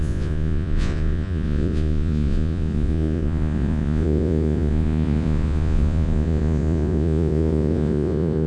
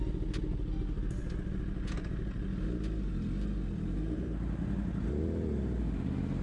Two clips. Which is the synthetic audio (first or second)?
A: first